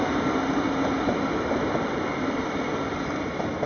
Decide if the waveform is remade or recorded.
remade